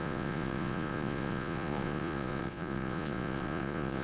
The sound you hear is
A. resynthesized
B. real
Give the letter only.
A